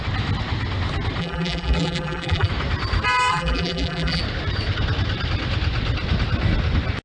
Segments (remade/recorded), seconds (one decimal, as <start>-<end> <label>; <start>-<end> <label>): 0.0-1.2 recorded; 1.2-2.5 remade; 2.5-3.3 recorded; 3.3-4.2 remade; 4.2-7.0 recorded